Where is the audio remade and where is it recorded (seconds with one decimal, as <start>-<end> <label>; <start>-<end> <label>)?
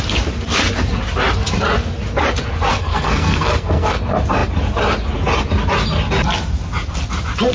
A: 0.0-2.7 recorded; 2.7-4.0 remade; 4.0-7.5 recorded